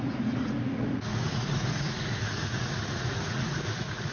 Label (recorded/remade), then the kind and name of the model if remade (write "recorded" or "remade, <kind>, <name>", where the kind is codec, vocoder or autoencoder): remade, vocoder, Vocos